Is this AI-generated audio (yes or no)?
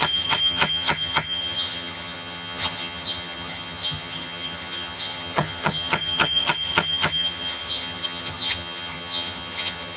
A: yes